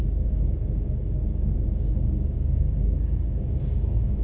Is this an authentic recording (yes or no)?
no